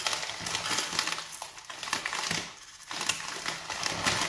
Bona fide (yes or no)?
yes